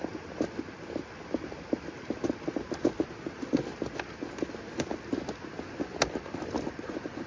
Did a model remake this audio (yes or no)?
no